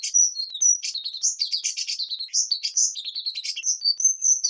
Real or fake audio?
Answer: real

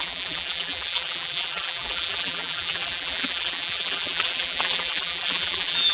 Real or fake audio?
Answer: fake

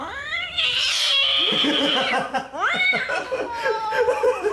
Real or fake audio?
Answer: fake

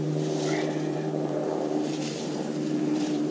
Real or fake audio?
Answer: fake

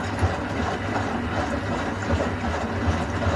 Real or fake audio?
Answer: real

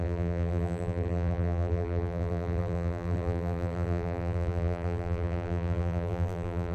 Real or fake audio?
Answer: fake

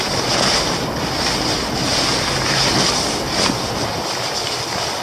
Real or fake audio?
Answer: real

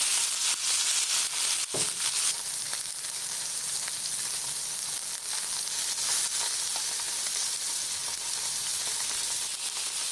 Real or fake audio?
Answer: real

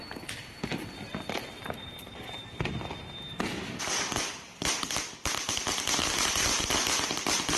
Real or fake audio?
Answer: real